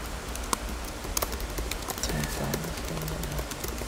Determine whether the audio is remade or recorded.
recorded